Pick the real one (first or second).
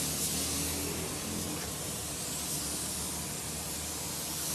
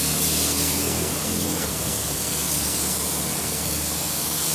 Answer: first